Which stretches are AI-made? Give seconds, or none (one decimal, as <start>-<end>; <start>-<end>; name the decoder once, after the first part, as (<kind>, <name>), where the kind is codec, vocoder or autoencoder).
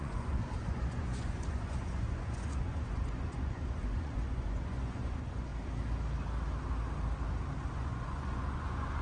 0.0-5.5 (vocoder, Vocos); 7.7-9.0